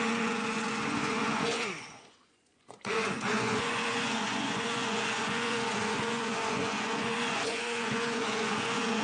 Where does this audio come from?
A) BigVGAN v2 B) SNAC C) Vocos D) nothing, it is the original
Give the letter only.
C